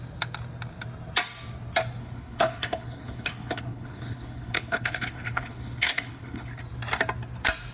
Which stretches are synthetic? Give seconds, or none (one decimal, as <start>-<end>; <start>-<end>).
2.0-6.6